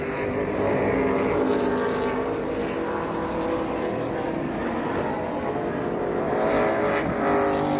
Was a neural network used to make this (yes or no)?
no